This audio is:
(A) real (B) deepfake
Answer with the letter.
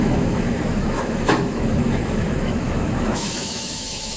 B